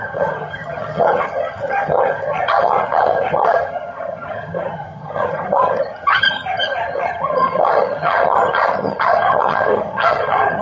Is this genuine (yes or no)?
no